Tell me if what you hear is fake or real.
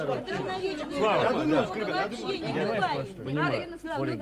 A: real